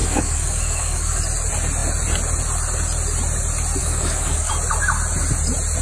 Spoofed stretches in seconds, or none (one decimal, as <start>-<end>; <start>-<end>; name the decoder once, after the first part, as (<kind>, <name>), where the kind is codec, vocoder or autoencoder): 0.0-1.2 (codec, DAC); 3.8-4.5